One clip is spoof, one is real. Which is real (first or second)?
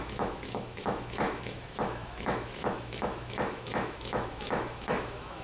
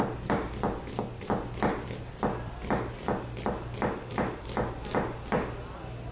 second